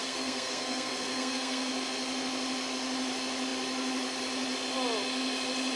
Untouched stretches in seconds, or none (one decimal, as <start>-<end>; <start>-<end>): 1.7-5.8